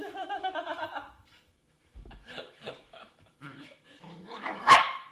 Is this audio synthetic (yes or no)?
yes